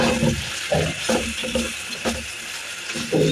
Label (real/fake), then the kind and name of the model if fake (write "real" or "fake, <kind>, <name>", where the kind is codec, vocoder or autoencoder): real